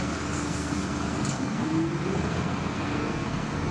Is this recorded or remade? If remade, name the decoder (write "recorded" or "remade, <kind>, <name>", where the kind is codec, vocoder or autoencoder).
remade, codec, SNAC